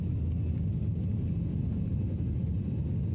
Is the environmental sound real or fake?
real